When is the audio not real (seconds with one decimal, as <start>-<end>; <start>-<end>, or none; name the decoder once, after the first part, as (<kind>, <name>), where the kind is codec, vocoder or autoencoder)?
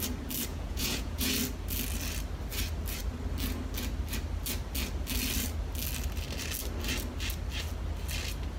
0.5-1.3 (vocoder, Vocos)